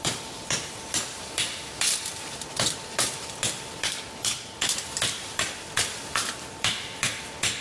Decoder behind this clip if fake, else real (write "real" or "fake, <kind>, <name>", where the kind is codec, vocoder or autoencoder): fake, vocoder, BigVGAN v2